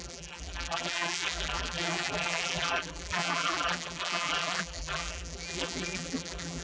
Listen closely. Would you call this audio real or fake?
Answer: fake